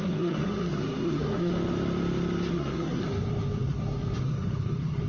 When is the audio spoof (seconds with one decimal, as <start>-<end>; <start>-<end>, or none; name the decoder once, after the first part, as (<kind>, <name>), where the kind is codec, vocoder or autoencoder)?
0.0-1.5 (codec, SNAC); 2.5-5.1

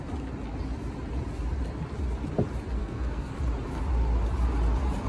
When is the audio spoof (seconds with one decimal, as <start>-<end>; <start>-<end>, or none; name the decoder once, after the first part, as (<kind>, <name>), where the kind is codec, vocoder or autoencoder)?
2.8-3.4 (codec, SNAC)

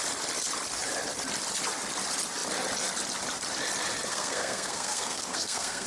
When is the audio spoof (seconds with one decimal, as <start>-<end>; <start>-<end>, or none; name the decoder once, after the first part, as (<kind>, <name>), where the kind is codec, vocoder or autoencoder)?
4.1-5.9 (codec, SNAC)

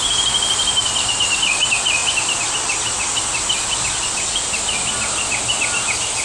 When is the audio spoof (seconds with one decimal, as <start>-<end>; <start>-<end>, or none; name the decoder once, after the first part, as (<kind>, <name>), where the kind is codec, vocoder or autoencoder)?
none

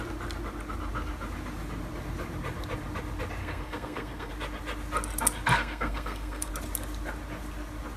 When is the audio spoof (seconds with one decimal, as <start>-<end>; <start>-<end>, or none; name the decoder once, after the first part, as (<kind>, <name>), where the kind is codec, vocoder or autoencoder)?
3.4-4.3 (codec, SNAC); 5.5-6.5

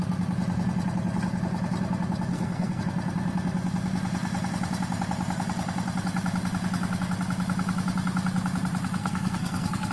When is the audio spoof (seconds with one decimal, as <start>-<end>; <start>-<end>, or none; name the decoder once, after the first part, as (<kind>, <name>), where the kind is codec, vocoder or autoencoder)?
2.3-2.8 (codec, SNAC); 9.0-9.9

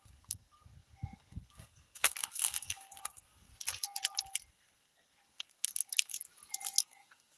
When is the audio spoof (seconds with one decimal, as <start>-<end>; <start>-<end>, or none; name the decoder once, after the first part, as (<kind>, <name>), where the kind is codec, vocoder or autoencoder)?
0.0-3.5 (codec, SNAC); 4.5-6.1; 6.8-7.4